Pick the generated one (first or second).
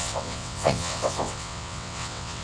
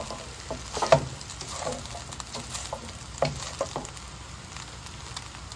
first